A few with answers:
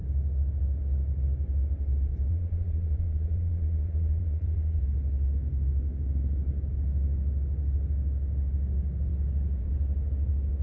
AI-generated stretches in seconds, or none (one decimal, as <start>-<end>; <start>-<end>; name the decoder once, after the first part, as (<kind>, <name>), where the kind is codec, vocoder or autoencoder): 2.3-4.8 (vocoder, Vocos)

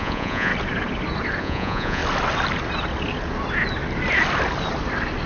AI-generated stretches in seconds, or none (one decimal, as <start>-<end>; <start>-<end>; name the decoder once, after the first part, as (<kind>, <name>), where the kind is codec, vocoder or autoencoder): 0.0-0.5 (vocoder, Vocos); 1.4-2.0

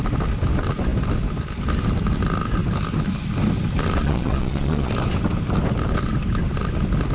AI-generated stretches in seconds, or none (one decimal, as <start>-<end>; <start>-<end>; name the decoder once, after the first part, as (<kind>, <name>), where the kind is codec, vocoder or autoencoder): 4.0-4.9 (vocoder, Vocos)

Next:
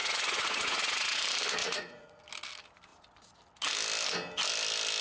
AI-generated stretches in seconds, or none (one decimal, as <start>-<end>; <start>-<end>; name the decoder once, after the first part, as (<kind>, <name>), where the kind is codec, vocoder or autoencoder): 0.0-1.2 (vocoder, Vocos); 1.6-2.2

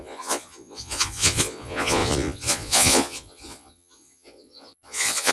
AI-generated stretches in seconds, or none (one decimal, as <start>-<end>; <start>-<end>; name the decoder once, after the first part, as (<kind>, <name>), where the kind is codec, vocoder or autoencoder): 0.0-5.3 (vocoder, Vocos)